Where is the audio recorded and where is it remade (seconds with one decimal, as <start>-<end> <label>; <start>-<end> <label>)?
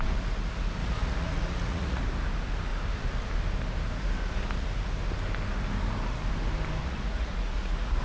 0.0-0.8 recorded; 0.8-2.0 remade; 2.0-6.8 recorded; 6.8-8.0 remade